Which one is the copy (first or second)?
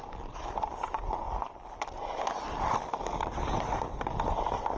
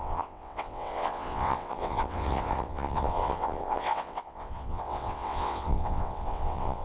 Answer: second